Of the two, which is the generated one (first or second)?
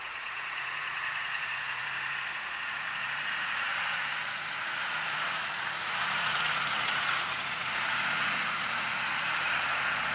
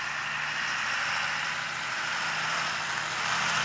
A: first